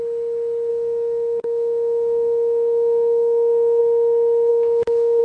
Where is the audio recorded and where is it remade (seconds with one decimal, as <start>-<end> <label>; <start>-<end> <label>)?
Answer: 0.0-0.7 recorded; 0.7-3.8 remade; 3.8-4.5 recorded; 4.5-5.2 remade